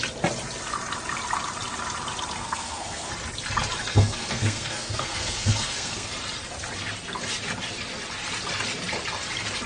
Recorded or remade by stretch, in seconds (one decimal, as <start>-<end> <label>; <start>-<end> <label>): 0.0-2.4 recorded; 2.4-3.1 remade; 3.1-3.9 recorded; 3.9-6.1 remade; 6.1-9.7 recorded